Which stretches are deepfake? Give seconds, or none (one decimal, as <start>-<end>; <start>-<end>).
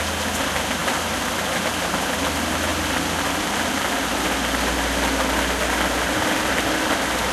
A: none